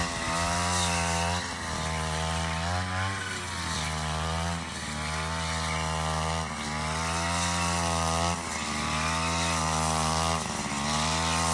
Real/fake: real